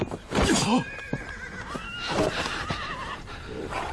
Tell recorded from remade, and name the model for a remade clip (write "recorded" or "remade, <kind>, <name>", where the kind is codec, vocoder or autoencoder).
remade, vocoder, BigVGAN v2